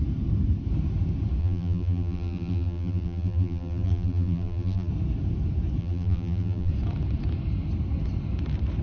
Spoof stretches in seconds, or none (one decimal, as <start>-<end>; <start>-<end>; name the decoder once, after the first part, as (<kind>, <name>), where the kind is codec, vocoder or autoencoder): 1.4-4.9 (vocoder, BigVGAN v2); 5.8-6.7